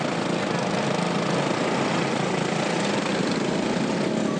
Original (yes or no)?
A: yes